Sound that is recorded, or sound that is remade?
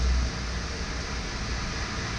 recorded